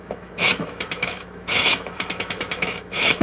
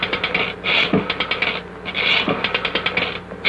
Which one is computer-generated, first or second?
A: first